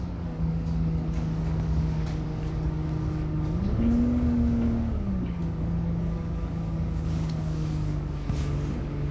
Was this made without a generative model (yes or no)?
no